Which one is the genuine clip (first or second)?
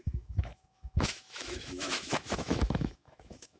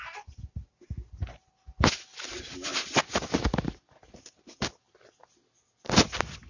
second